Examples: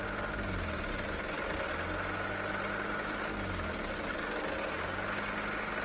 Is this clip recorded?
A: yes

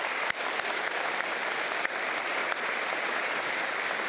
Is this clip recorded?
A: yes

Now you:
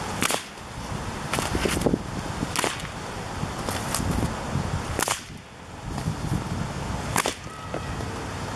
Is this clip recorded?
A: yes